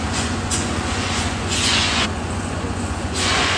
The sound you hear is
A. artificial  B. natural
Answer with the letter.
A